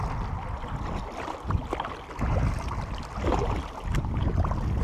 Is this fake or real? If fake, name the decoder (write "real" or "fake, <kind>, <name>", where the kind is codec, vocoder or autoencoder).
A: real